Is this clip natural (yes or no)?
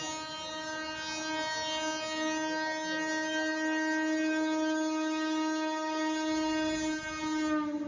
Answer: yes